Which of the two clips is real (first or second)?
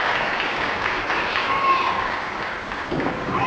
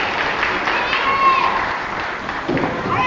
second